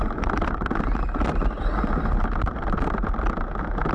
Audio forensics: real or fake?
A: real